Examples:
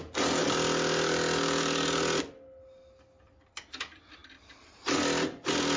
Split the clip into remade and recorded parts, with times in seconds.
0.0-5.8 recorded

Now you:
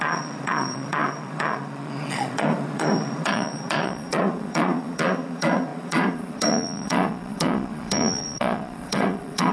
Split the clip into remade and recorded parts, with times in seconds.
0.0-9.5 remade

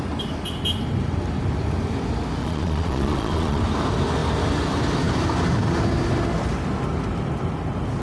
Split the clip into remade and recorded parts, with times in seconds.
0.0-2.4 recorded; 2.4-3.6 remade; 3.6-8.0 recorded

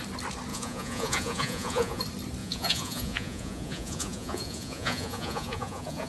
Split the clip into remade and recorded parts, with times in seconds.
0.0-0.5 recorded; 0.5-2.0 remade; 2.0-2.4 recorded; 2.4-6.1 remade

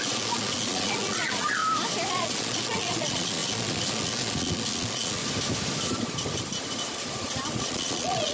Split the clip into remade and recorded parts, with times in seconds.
0.0-1.6 remade; 1.6-2.1 recorded; 2.1-5.2 remade; 5.2-7.6 recorded; 7.6-8.3 remade